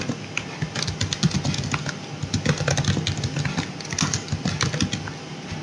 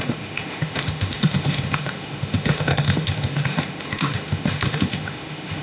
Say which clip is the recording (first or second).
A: first